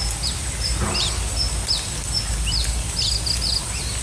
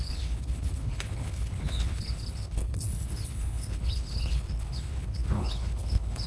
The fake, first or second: second